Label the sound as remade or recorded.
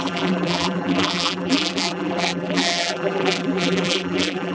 remade